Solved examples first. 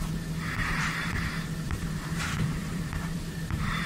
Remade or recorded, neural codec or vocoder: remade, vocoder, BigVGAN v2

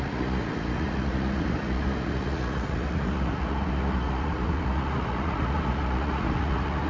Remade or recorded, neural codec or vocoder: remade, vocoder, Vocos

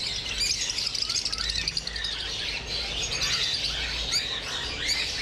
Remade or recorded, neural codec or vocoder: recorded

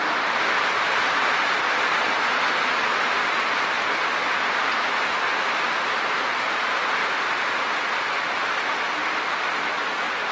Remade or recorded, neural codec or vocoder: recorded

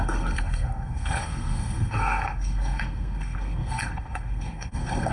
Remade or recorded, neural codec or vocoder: remade, codec, SNAC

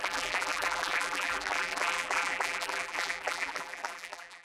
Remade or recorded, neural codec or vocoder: remade, vocoder, BigVGAN v2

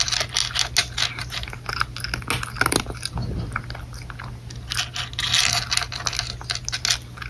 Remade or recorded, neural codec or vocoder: recorded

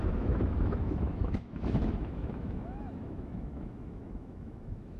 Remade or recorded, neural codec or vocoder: remade, autoencoder, DAC-VAE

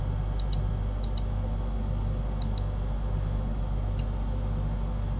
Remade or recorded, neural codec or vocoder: recorded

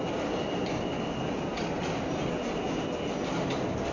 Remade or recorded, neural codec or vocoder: recorded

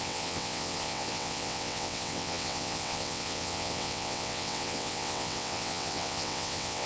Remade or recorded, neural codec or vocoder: remade, vocoder, WaveNeXt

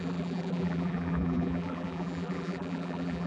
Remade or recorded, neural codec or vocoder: remade, vocoder, BigVGAN v2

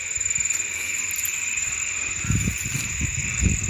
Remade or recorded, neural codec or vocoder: recorded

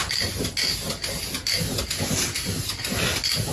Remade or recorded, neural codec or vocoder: recorded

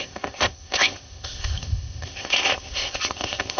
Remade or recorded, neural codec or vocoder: remade, codec, ZipCodec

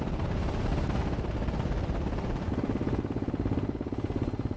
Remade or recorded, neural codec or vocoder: recorded